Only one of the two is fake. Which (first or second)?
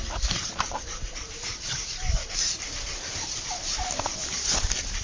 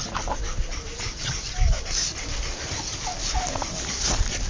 first